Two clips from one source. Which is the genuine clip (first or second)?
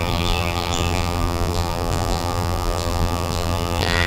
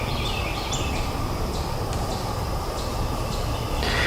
second